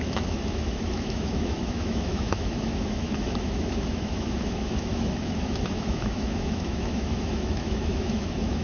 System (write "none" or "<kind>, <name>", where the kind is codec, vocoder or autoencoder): autoencoder, DAC-VAE